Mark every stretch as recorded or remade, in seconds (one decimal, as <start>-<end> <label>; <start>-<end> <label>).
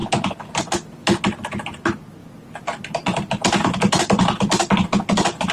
0.0-5.5 recorded